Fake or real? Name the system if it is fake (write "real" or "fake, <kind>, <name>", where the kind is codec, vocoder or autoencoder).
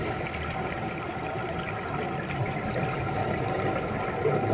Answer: real